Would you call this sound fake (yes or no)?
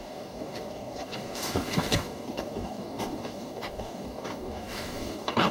yes